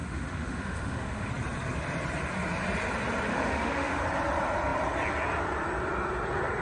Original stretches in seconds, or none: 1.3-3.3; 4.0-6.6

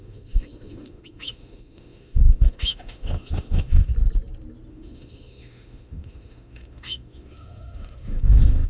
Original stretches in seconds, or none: 3.9-4.7

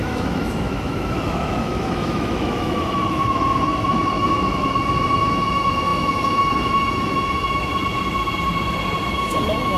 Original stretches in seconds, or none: 7.8-9.1

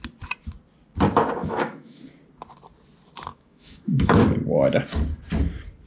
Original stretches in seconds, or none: 0.0-1.4; 2.0-3.3; 4.2-5.9

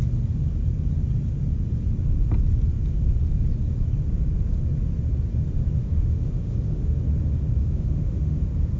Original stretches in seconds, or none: 0.0-5.8; 7.0-7.6; 8.4-8.8

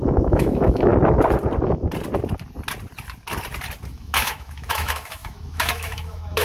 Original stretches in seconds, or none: 0.9-3.9

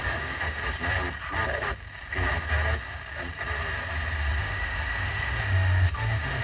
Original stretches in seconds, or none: 0.6-4.4